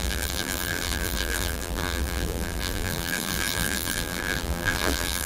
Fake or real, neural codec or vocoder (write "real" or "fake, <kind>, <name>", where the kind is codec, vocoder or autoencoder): fake, vocoder, BigVGAN v2